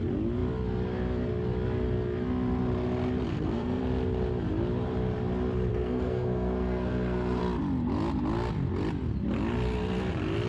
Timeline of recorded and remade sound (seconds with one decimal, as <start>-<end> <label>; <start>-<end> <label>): 0.0-3.3 recorded; 3.3-3.8 remade; 3.8-5.7 recorded; 5.7-7.4 remade; 7.4-10.5 recorded